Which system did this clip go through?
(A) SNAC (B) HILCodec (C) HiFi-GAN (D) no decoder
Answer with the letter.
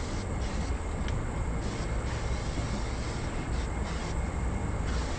D